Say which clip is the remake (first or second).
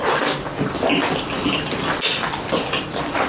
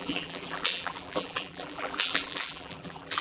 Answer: second